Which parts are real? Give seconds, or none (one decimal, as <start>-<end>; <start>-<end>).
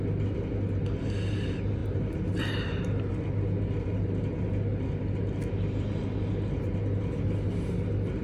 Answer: 0.0-8.2